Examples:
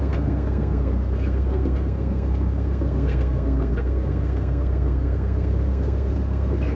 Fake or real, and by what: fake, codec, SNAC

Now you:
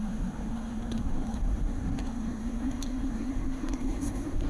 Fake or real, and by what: fake, codec, SNAC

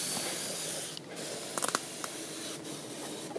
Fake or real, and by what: real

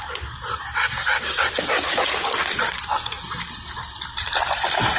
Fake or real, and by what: real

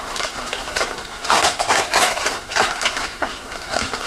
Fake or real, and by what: fake, codec, SNAC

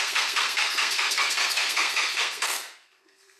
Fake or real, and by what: fake, codec, SNAC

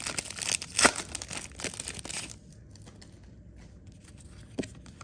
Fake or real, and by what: real